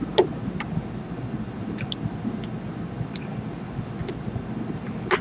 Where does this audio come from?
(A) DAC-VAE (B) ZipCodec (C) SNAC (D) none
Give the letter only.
D